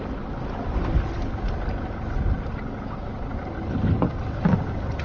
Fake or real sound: real